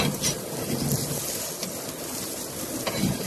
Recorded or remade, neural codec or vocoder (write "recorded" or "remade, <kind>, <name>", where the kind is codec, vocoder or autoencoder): recorded